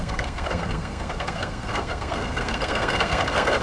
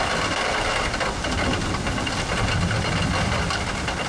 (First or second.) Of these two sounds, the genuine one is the second